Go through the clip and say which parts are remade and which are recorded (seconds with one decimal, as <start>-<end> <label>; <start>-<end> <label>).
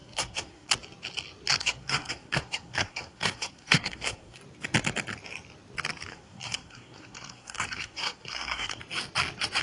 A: 0.0-0.7 remade; 0.7-1.6 recorded; 1.6-4.4 remade; 4.4-6.1 recorded; 6.1-8.8 remade; 8.8-9.6 recorded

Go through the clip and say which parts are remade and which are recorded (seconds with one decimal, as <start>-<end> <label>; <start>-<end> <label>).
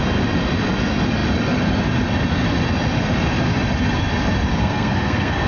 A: 0.0-4.6 recorded; 4.6-5.5 remade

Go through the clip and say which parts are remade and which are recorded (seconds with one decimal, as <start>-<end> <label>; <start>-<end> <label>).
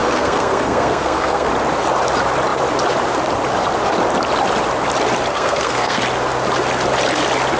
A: 0.0-1.5 remade; 1.5-5.3 recorded; 5.3-6.0 remade; 6.0-7.6 recorded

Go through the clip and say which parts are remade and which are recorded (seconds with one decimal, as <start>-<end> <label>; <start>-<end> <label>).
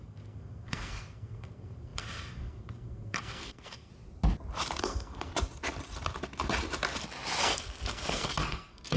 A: 0.0-3.9 remade; 3.9-4.8 recorded; 4.8-5.3 remade; 5.3-7.4 recorded; 7.4-9.0 remade